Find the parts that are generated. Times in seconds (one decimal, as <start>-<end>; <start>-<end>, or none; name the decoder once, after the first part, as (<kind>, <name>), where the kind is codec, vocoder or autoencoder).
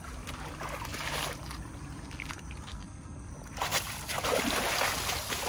2.7-3.3 (codec, SNAC)